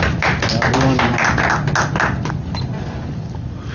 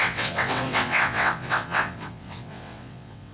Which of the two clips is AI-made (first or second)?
second